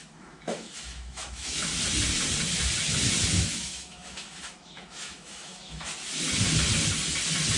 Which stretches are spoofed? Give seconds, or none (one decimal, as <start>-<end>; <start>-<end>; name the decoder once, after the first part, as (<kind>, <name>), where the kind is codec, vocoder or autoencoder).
0.0-1.7 (autoencoder, DAC-VAE); 3.4-5.9

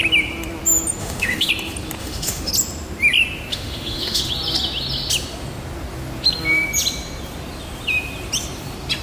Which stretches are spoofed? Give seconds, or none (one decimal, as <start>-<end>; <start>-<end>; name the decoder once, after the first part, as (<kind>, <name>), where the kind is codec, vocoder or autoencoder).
1.0-1.5 (autoencoder, DAC-VAE); 2.0-2.5; 3.5-4.3

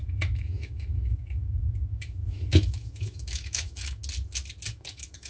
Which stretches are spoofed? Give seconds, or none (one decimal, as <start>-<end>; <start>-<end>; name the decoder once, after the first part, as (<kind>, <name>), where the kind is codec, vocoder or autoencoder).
0.0-4.0 (autoencoder, DAC-VAE); 4.7-5.3

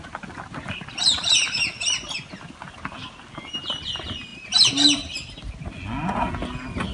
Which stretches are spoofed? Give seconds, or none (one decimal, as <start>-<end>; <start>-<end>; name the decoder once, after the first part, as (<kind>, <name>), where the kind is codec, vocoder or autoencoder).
none

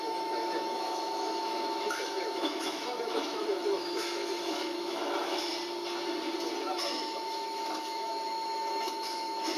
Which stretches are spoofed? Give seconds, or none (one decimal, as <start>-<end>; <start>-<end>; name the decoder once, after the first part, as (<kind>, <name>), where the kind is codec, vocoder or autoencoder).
0.0-5.5 (autoencoder, DAC-VAE); 6.6-9.6

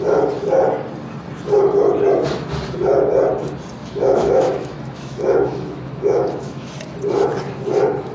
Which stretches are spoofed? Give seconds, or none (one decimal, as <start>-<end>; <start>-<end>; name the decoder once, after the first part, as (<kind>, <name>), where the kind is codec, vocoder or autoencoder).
3.8-6.7 (autoencoder, DAC-VAE)

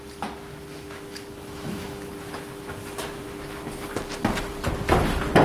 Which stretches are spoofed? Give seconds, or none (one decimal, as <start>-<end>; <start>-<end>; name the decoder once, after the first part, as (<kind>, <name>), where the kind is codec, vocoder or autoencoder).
0.5-3.7 (autoencoder, DAC-VAE)

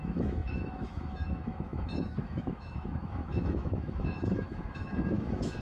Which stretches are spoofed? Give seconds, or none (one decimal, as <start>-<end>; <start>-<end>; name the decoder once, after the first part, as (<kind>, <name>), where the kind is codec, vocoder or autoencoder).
0.0-5.6 (autoencoder, DAC-VAE)